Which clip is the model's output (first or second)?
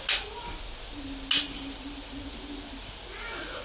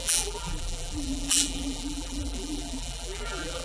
second